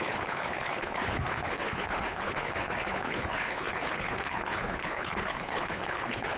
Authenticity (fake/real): fake